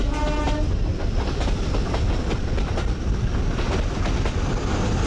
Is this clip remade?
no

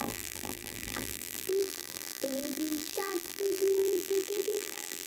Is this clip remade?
yes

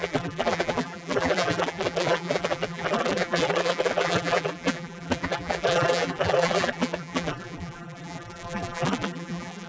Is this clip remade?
yes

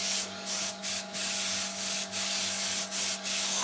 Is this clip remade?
yes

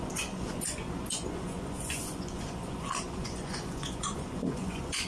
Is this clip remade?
yes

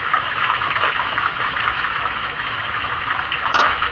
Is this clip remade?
yes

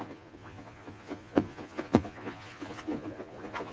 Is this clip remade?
yes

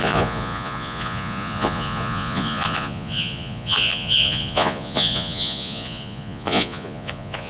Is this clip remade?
yes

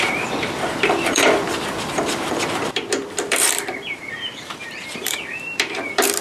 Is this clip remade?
yes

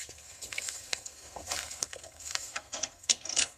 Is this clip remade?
yes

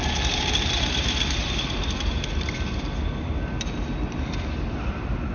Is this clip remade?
no